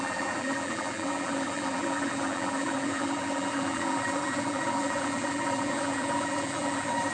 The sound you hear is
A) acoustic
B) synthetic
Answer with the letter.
B